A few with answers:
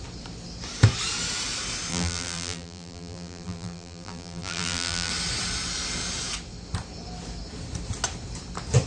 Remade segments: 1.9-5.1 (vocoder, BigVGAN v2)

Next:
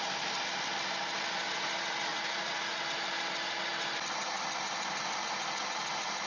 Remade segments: 2.1-2.8 (vocoder, Vocos)

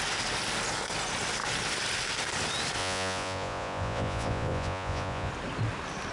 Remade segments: 2.8-5.3 (vocoder, Vocos)

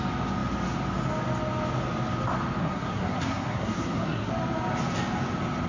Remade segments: 2.6-4.3 (codec, SNAC)

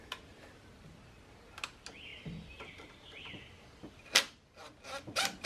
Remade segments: none